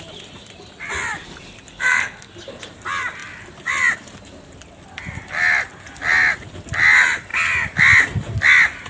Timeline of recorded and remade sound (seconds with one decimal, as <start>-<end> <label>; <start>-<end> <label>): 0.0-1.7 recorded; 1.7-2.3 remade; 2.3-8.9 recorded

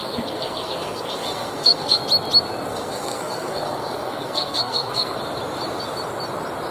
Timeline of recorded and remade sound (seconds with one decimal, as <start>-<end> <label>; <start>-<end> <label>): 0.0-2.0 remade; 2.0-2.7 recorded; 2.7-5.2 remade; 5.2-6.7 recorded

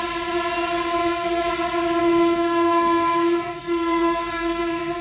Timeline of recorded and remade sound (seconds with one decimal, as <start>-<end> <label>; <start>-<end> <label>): 0.0-1.0 recorded; 1.0-1.5 remade; 1.5-2.0 recorded; 2.0-5.0 remade

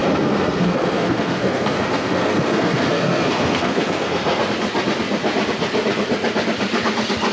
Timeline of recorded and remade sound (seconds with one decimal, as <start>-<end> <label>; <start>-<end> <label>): 0.0-4.4 remade; 4.4-7.3 recorded

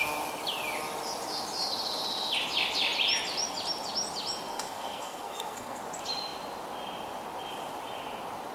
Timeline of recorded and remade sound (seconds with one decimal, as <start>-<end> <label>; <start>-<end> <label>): 0.0-4.5 recorded; 4.5-5.8 remade; 5.8-8.5 recorded

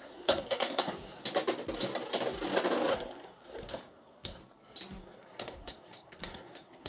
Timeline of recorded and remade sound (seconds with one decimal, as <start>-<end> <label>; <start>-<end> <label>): 0.0-1.2 remade; 1.2-2.9 recorded; 2.9-4.4 remade; 4.4-5.0 recorded; 5.0-6.9 remade